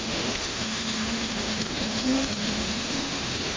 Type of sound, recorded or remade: remade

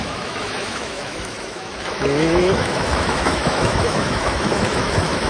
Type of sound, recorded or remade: remade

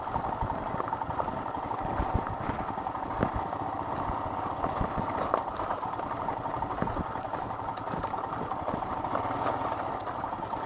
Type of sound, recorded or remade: recorded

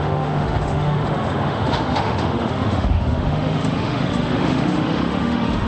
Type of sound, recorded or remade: remade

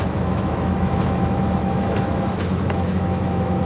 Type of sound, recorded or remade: remade